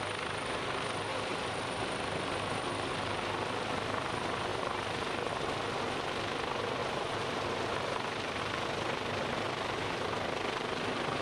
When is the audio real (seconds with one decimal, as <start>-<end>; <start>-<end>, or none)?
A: 0.0-1.1; 1.7-4.5; 5.3-6.8; 8.4-11.2